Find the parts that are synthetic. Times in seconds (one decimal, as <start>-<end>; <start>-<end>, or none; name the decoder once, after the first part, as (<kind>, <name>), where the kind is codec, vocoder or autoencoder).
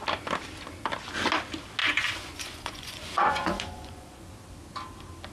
1.8-4.3 (vocoder, Vocos)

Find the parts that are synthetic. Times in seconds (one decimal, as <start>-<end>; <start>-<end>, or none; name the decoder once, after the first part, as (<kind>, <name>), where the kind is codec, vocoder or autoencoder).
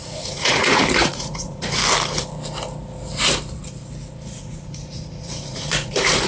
0.0-1.8 (vocoder, Vocos); 4.4-6.3